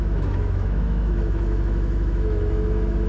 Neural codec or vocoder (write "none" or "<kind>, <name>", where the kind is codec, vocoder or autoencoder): autoencoder, DAC-VAE